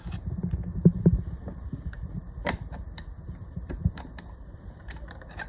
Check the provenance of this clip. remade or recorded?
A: remade